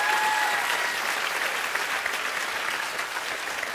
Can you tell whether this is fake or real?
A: real